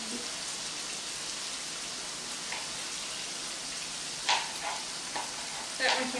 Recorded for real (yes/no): yes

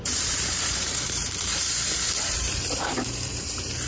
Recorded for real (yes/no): no